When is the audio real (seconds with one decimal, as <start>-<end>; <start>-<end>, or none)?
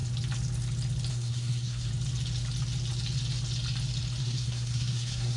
0.0-1.1; 1.9-4.2